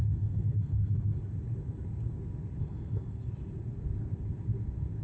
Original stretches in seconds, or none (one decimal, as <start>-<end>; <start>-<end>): 1.2-2.6; 3.3-5.0